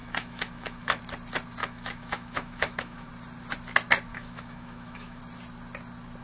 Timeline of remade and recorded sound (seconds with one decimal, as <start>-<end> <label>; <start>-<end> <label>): 0.0-1.0 remade; 1.0-1.6 recorded; 1.6-3.1 remade; 3.1-4.1 recorded; 4.1-5.2 remade; 5.2-6.2 recorded